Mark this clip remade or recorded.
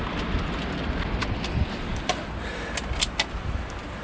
recorded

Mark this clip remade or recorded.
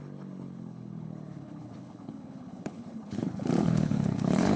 remade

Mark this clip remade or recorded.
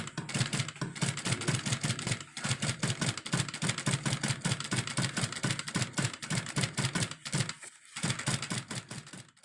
recorded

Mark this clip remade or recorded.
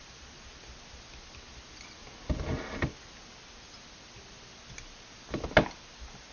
recorded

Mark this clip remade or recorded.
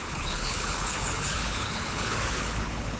remade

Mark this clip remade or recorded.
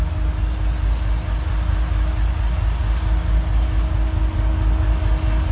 recorded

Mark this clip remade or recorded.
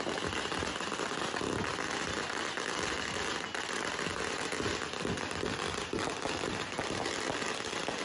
recorded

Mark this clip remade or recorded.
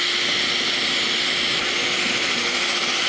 recorded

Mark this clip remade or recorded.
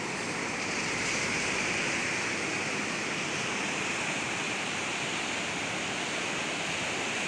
recorded